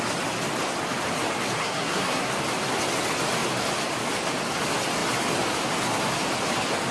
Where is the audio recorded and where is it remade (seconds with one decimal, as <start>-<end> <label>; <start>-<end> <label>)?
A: 0.0-1.6 recorded; 1.6-2.3 remade; 2.3-6.9 recorded